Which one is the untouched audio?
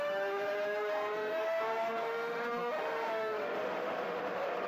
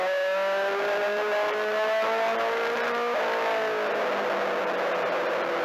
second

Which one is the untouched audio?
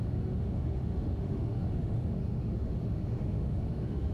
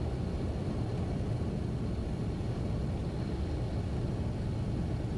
second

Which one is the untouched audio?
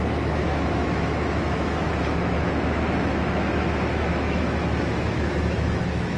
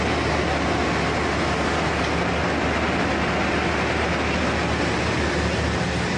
second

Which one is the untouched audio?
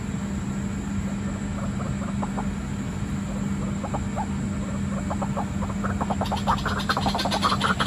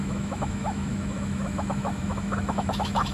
first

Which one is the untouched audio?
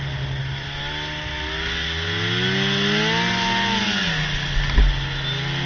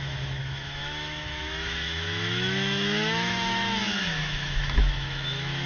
first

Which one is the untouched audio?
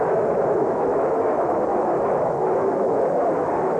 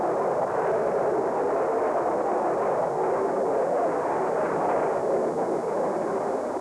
second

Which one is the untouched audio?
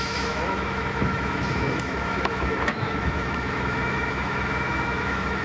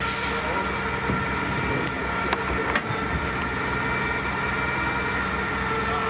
second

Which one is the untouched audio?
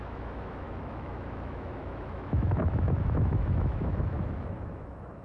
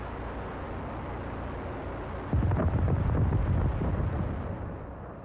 second